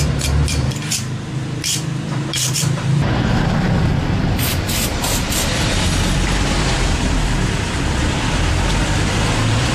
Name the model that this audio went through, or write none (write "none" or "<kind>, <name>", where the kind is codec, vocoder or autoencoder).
vocoder, BigVGAN v2